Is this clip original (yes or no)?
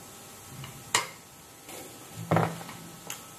yes